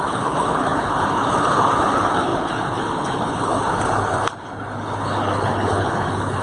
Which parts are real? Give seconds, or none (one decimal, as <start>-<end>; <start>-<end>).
none